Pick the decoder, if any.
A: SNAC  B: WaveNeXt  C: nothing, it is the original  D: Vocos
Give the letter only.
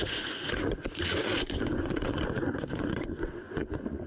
D